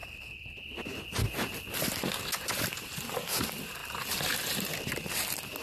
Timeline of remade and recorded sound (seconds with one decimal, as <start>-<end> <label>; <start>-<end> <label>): 0.0-5.6 recorded